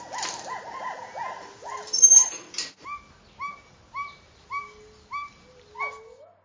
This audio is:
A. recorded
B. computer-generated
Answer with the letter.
A